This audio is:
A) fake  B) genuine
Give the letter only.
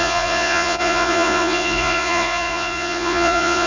A